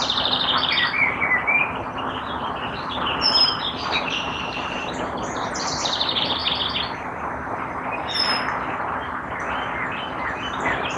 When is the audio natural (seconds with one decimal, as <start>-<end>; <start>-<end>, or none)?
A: 6.4-10.4